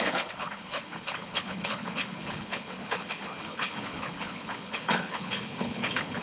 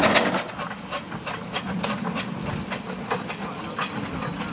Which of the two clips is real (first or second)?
second